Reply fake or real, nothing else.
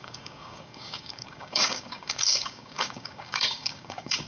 fake